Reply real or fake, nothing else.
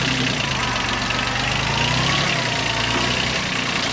real